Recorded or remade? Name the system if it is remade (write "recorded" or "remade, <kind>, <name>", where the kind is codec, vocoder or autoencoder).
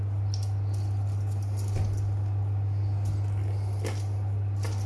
recorded